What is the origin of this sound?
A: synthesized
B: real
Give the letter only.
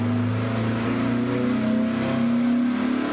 B